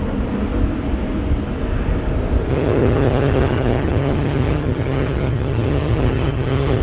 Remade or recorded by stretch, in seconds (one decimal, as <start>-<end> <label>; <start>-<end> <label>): 0.0-2.5 recorded; 2.5-6.8 remade